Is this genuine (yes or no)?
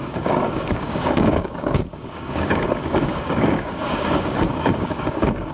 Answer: no